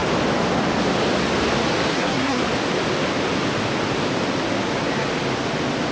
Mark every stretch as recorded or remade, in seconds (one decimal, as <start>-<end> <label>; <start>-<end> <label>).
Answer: 0.0-1.9 recorded; 1.9-2.4 remade; 2.4-5.9 recorded